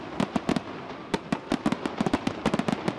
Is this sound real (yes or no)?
yes